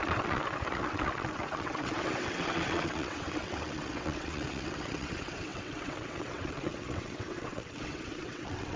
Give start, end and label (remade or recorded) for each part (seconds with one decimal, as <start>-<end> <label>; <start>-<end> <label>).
0.0-8.8 remade